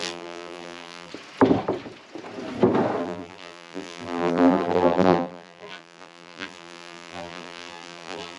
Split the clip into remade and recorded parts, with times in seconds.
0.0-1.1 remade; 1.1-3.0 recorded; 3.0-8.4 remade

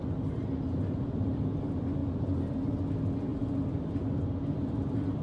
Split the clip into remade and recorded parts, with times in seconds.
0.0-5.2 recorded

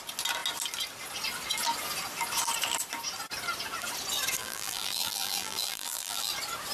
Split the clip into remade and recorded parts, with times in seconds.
0.0-4.4 recorded; 4.4-6.3 remade; 6.3-6.7 recorded